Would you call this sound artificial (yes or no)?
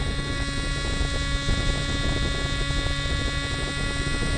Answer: no